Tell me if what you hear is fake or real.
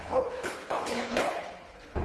fake